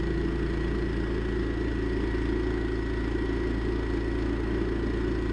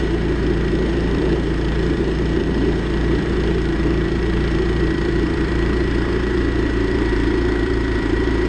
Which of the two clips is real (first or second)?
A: first